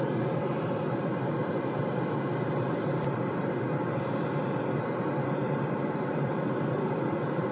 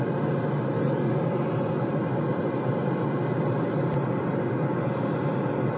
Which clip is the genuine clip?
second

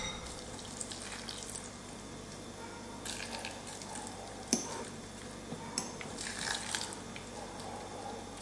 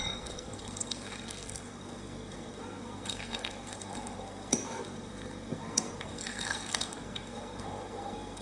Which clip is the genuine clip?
first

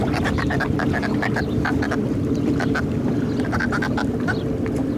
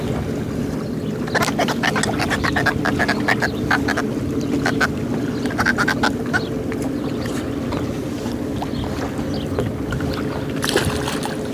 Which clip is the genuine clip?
second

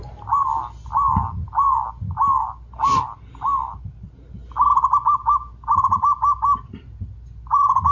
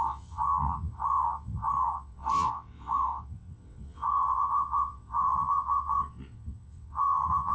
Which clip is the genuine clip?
first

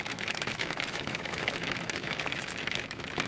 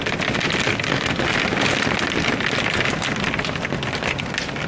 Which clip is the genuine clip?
second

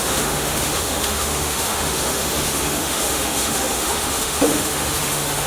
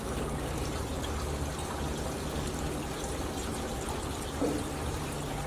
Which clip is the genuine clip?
second